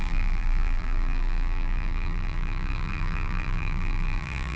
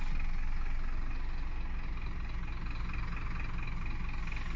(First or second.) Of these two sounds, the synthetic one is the first